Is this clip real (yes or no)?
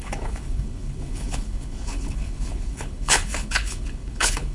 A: no